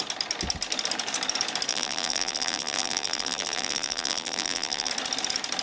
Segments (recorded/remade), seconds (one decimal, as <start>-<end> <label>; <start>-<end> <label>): 0.0-1.7 recorded; 1.7-4.9 remade; 4.9-5.6 recorded